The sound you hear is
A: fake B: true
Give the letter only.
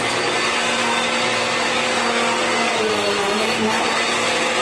B